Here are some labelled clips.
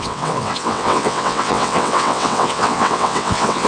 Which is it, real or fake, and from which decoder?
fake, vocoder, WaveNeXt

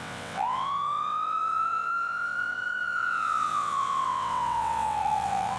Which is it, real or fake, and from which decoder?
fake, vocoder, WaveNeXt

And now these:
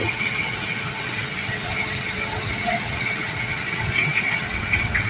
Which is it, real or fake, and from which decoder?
fake, vocoder, WaveNeXt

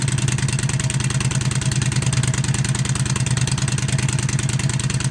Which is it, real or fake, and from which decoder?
real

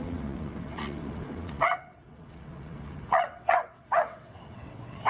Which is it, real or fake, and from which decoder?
fake, vocoder, WaveNeXt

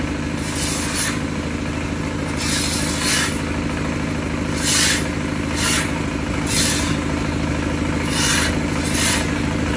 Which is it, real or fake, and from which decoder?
real